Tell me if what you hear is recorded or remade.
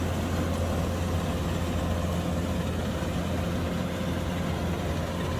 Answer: recorded